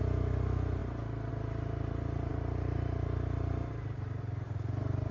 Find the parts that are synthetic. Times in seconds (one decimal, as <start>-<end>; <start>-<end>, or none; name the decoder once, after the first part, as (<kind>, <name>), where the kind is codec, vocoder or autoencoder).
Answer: none